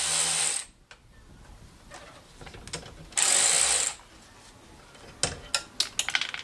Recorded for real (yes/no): yes